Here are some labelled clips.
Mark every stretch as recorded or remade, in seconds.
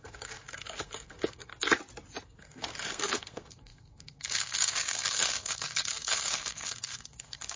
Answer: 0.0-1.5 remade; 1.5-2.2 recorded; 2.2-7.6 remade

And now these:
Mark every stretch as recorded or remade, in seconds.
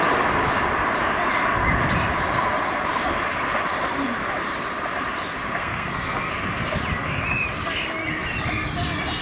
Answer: 0.0-5.6 recorded; 5.6-6.3 remade; 6.3-9.2 recorded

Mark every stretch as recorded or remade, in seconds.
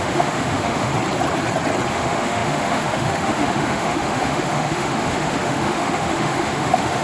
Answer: 0.0-0.9 remade; 0.9-1.9 recorded; 1.9-7.0 remade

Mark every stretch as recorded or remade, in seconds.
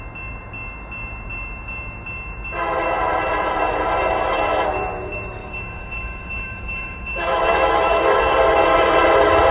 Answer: 0.0-5.4 recorded; 5.4-8.2 remade; 8.2-9.5 recorded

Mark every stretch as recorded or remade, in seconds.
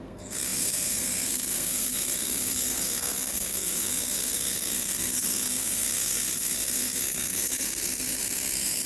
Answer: 0.0-8.9 remade